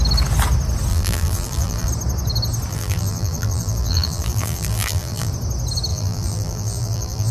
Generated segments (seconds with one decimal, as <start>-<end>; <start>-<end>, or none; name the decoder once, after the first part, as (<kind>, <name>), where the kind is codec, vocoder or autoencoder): 0.9-1.9 (vocoder, BigVGAN v2); 2.7-5.3; 5.9-7.3